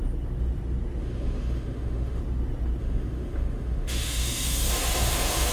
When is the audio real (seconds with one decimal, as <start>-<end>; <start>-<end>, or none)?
0.0-1.0; 2.2-2.8